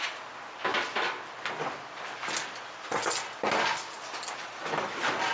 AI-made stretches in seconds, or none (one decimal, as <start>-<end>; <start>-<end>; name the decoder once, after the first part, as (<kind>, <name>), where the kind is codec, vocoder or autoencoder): none